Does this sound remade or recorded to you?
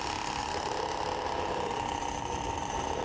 recorded